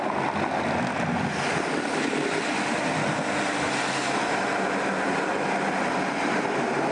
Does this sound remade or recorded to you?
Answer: recorded